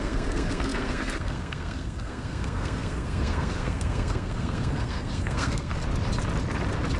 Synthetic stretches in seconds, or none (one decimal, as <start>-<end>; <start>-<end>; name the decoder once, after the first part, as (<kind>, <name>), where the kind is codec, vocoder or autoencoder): 0.0-5.7 (codec, SNAC)

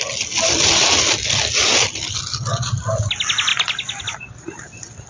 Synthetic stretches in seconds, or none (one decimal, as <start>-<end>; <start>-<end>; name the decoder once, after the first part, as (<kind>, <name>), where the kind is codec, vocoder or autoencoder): none

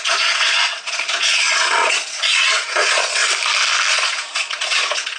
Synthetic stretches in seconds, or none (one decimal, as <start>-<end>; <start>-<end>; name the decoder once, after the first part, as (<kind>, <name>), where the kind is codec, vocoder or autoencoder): 0.0-3.2 (vocoder, Vocos); 3.9-5.2

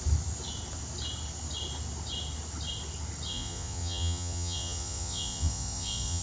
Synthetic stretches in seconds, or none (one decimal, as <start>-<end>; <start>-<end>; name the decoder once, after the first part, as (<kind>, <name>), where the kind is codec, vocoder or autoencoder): 3.3-6.2 (vocoder, Vocos)